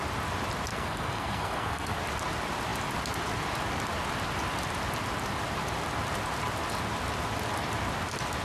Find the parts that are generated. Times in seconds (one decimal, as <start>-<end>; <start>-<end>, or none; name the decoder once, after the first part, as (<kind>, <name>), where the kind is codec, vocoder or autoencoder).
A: 0.7-2.0 (codec, SNAC)